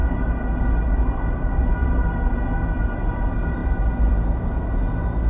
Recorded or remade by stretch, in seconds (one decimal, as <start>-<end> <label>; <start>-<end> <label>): 0.0-1.1 remade; 1.1-1.8 recorded; 1.8-2.3 remade; 2.3-5.3 recorded

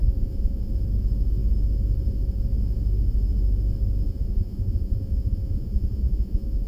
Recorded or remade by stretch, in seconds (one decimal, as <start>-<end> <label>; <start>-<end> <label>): 0.0-0.7 remade; 0.7-4.1 recorded; 4.1-6.7 remade

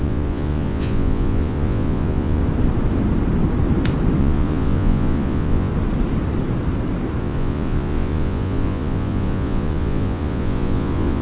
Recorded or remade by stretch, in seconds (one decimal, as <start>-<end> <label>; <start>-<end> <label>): 0.0-2.4 remade; 2.4-4.2 recorded; 4.2-5.7 remade; 5.7-7.2 recorded; 7.2-11.2 remade

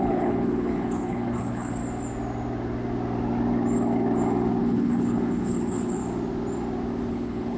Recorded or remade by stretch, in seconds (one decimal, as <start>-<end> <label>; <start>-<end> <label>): 0.0-1.8 remade; 1.8-4.6 recorded; 4.6-6.0 remade; 6.0-7.1 recorded; 7.1-7.6 remade

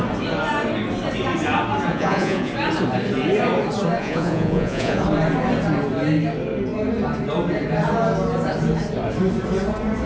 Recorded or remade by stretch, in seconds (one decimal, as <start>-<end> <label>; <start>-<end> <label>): 0.0-1.9 recorded; 1.9-2.5 remade; 2.5-4.0 recorded; 4.0-5.0 remade; 5.0-10.1 recorded

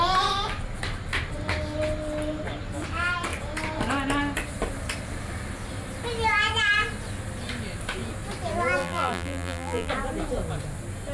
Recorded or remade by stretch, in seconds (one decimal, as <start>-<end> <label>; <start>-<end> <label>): 0.0-8.8 recorded; 8.8-9.9 remade; 9.9-11.1 recorded

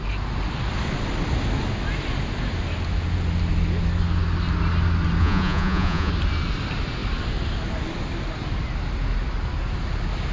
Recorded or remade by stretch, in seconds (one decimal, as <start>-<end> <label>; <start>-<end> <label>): 0.0-5.2 recorded; 5.2-6.1 remade; 6.1-10.3 recorded

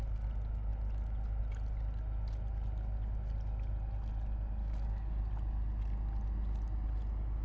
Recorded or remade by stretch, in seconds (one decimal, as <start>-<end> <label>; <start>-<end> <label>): 0.0-4.6 recorded; 4.6-5.2 remade; 5.2-7.4 recorded